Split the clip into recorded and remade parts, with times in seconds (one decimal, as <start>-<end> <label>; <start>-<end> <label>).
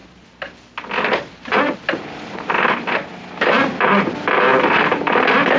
0.0-4.5 recorded; 4.5-5.6 remade